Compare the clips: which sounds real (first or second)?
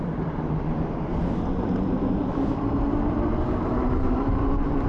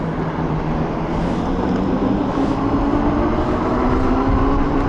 second